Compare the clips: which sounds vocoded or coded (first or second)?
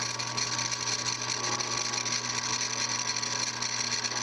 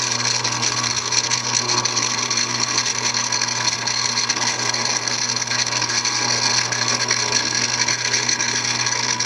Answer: second